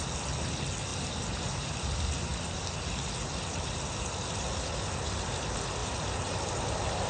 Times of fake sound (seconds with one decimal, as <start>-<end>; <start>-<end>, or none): 0.9-1.8; 5.8-6.5